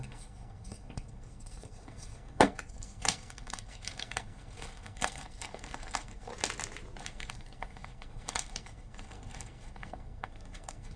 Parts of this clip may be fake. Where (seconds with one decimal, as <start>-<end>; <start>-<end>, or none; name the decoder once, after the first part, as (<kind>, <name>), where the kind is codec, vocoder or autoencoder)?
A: 0.0-6.3 (codec, SNAC); 7.0-11.0